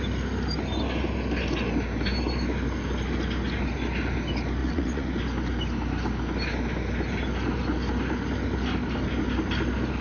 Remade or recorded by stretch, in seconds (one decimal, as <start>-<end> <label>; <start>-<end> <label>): 0.0-4.6 recorded; 4.6-5.1 remade; 5.1-10.0 recorded